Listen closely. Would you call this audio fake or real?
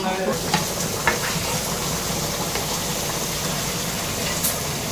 real